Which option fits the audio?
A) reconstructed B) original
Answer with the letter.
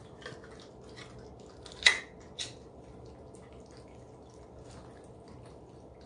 B